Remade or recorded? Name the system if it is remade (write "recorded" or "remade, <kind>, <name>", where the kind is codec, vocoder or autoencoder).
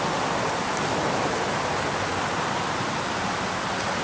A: recorded